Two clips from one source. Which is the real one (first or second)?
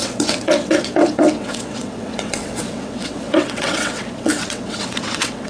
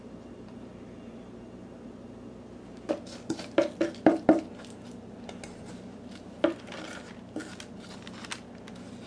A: second